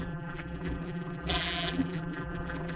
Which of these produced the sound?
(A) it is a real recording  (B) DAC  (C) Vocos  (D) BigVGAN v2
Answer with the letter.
D